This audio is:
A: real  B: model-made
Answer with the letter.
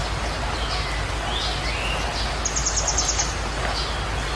A